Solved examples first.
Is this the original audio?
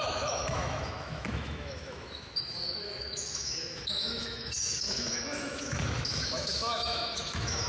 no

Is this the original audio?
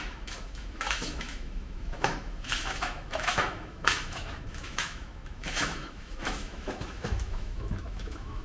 no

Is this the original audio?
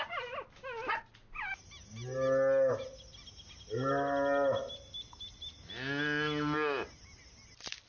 yes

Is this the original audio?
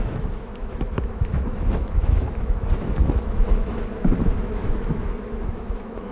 no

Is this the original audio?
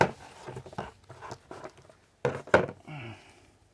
yes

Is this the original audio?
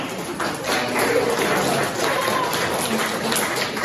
yes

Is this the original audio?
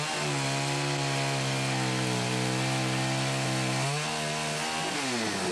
yes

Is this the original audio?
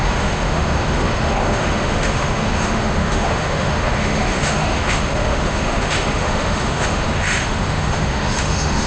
no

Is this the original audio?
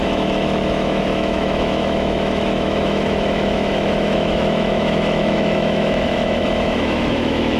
no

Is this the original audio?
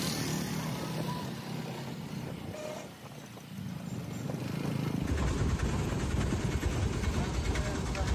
yes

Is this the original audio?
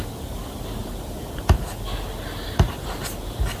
yes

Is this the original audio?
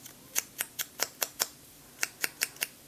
yes